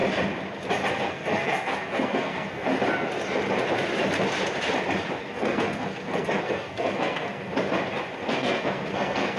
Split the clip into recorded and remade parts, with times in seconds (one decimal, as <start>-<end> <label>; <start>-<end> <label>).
0.0-0.9 recorded; 0.9-2.7 remade; 2.7-5.2 recorded; 5.2-7.5 remade; 7.5-8.3 recorded; 8.3-9.4 remade